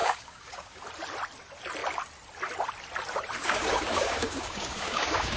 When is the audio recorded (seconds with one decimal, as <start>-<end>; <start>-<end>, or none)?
0.8-3.4